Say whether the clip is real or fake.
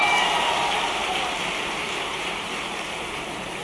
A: fake